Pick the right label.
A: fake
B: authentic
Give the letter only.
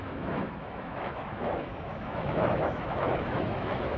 A